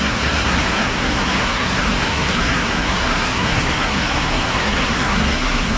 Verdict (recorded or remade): remade